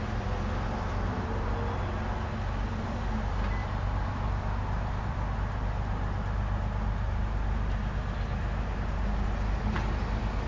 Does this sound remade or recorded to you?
recorded